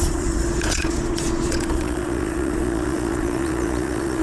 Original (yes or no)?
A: no